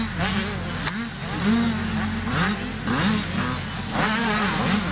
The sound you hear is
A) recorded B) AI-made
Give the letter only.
A